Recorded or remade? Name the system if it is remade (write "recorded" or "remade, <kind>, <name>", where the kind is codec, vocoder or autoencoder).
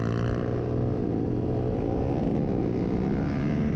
recorded